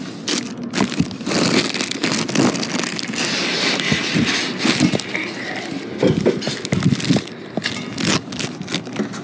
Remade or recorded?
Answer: recorded